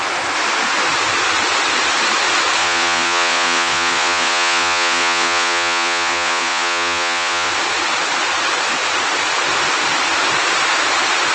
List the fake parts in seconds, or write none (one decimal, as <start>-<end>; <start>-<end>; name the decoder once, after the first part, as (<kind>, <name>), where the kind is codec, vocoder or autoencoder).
2.6-7.5 (vocoder, Vocos)